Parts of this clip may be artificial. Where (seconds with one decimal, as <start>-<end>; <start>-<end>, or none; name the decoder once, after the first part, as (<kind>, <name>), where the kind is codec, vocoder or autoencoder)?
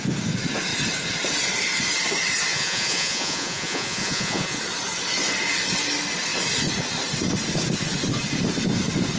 2.5-4.6 (vocoder, Vocos)